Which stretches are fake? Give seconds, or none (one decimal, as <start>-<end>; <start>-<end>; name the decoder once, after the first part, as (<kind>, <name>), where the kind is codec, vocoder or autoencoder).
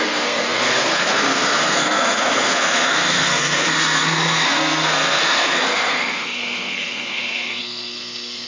0.0-8.5 (codec, SNAC)